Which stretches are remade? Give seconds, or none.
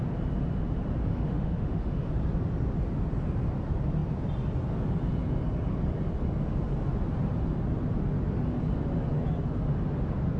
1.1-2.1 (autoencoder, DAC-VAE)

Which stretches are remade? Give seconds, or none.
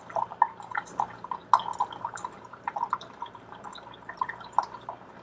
0.0-1.4 (vocoder, BigVGAN v2); 2.0-5.2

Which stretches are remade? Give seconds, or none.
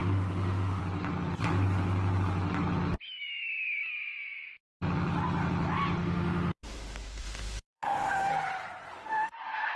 0.0-0.8 (autoencoder, DAC-VAE); 6.0-8.3; 9.0-9.8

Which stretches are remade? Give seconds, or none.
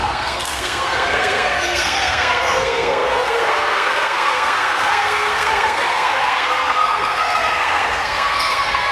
0.0-8.9 (codec, SNAC)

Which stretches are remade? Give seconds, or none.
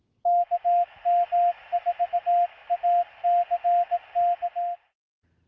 none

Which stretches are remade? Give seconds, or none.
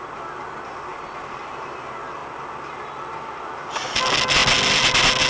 0.9-1.5 (vocoder, BigVGAN v2)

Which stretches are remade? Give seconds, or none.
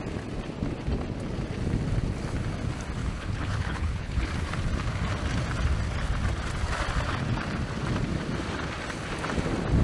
3.0-4.3 (codec, HILCodec)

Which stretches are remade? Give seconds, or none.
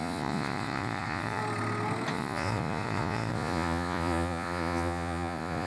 0.0-1.4 (vocoder, Vocos); 2.1-5.7